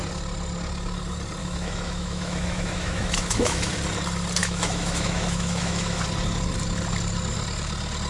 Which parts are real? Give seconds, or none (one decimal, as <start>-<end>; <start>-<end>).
0.0-1.4; 3.7-4.4; 6.0-8.1